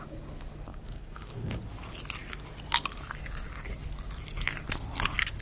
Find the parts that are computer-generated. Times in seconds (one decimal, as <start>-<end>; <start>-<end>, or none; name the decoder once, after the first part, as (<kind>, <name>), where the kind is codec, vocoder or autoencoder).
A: 0.7-1.6 (codec, DAC)